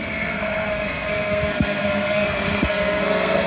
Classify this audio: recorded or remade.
remade